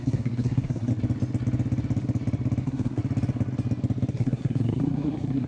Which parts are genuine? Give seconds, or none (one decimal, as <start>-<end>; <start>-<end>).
0.9-2.6; 3.0-4.1